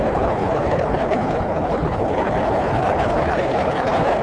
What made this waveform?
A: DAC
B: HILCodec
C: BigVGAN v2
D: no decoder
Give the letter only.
B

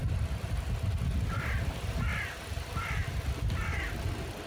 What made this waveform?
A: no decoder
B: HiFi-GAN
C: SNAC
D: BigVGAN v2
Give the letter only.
A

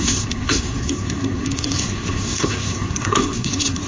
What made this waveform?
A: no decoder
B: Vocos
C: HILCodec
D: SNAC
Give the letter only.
D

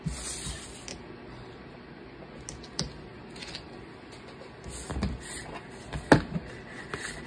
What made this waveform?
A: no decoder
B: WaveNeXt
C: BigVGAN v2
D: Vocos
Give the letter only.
A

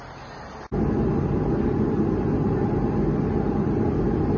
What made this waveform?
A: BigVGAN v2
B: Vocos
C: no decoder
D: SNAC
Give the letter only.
C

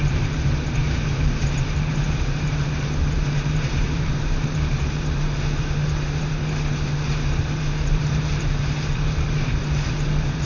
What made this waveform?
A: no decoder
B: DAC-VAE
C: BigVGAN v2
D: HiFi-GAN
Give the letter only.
C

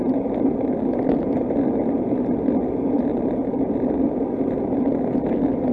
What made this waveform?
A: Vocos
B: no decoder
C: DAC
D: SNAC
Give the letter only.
B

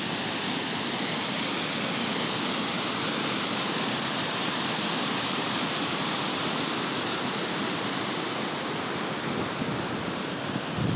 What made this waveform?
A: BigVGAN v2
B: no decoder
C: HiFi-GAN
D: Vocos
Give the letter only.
B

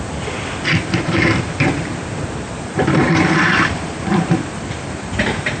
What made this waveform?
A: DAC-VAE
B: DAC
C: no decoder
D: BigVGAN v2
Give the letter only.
D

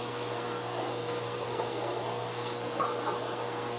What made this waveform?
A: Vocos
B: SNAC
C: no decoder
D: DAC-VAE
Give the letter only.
B